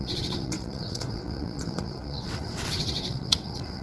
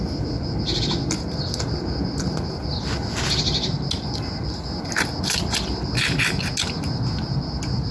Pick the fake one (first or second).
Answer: first